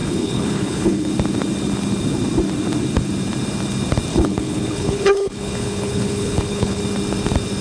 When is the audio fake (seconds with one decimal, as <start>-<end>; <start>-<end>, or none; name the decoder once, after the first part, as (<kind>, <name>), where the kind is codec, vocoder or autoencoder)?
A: 0.0-1.1 (codec, HILCodec); 4.1-6.8